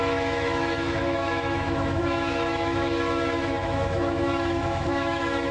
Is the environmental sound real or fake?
fake